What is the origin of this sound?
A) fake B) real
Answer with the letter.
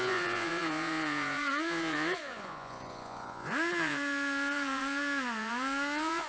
A